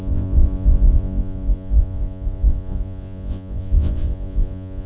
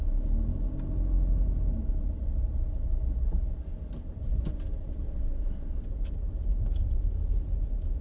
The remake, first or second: first